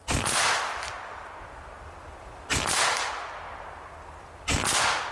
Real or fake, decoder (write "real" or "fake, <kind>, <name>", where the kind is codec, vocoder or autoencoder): real